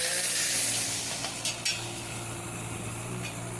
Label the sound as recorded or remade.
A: recorded